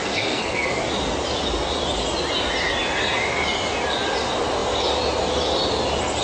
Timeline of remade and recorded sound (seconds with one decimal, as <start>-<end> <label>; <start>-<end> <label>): 0.0-0.8 remade; 0.8-6.2 recorded